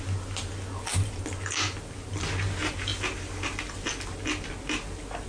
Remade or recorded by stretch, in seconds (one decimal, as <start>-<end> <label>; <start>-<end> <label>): 0.0-5.3 recorded